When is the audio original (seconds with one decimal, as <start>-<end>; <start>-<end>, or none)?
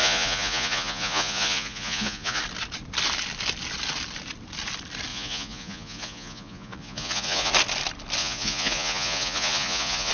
2.4-5.1; 7.5-8.2